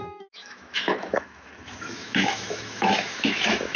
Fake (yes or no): yes